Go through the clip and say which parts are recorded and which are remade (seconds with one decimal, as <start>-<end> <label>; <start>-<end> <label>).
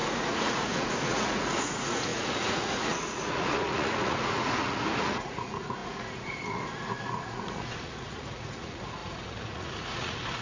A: 0.0-10.4 remade